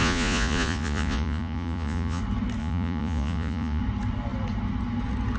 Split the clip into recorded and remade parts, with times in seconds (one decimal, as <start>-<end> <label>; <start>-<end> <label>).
0.0-2.2 remade; 2.2-2.6 recorded; 2.6-3.8 remade; 3.8-5.4 recorded